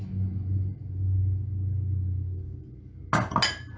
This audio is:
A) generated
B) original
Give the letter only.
B